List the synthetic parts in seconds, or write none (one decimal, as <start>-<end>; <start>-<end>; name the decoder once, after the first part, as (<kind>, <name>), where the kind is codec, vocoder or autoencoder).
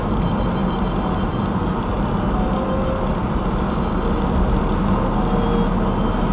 none